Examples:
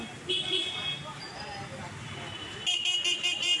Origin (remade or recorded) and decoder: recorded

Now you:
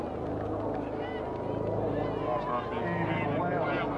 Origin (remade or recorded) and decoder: recorded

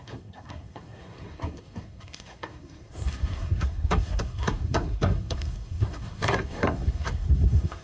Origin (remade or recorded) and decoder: remade, codec, SNAC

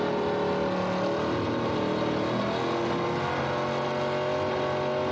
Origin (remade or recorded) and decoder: recorded